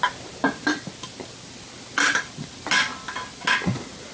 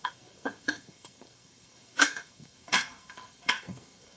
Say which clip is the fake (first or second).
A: second